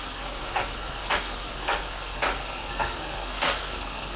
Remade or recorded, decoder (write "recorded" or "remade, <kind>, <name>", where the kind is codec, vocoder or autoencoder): remade, codec, SNAC